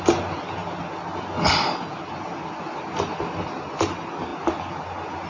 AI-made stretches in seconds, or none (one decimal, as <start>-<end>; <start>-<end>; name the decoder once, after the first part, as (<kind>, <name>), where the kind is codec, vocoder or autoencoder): none